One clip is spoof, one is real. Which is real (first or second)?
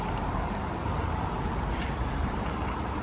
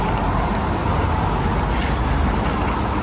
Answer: second